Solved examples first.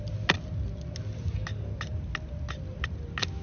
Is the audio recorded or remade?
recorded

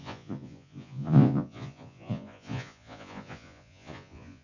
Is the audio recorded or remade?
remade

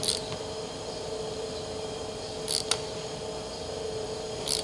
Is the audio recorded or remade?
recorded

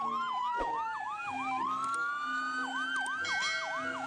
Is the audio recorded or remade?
recorded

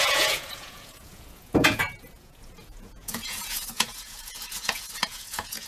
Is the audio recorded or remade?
remade